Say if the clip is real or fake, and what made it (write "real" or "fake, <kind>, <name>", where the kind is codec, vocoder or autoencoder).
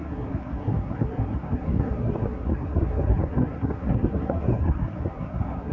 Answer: fake, codec, SNAC